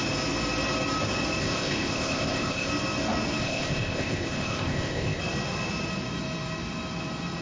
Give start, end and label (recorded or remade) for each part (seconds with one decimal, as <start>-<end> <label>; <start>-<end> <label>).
0.0-1.4 recorded; 1.4-2.7 remade; 2.7-3.4 recorded; 3.4-5.2 remade; 5.2-7.4 recorded

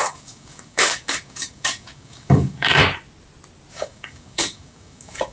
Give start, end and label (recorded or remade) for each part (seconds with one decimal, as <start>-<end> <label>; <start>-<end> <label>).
0.0-2.8 remade; 2.8-3.7 recorded; 3.7-5.3 remade

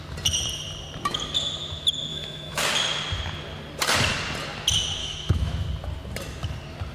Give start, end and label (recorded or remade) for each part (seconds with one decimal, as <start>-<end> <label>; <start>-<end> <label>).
0.0-2.1 recorded; 2.1-2.6 remade; 2.6-5.0 recorded; 5.0-5.5 remade; 5.5-6.9 recorded

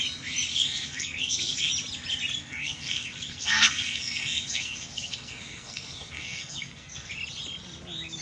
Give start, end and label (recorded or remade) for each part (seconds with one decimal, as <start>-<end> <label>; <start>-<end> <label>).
0.0-0.5 recorded; 0.5-1.7 remade; 1.7-2.4 recorded; 2.4-7.1 remade; 7.1-8.2 recorded

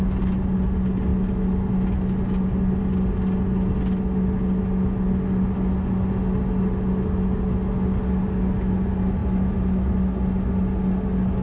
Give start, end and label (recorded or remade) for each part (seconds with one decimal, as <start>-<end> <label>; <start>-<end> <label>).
0.0-11.4 recorded